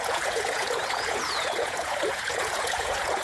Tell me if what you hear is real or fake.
fake